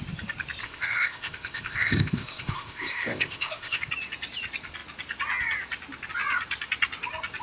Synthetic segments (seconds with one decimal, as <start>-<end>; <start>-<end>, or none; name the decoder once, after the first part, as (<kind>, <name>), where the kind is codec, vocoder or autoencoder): 0.6-3.8 (codec, ZipCodec)